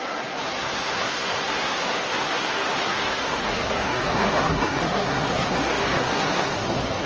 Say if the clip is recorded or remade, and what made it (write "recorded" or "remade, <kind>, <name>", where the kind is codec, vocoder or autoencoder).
remade, codec, SNAC